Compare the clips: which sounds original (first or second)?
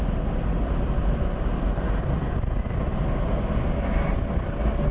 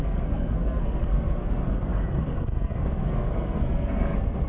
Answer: first